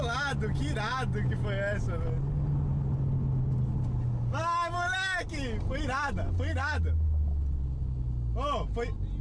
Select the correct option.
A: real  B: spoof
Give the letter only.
A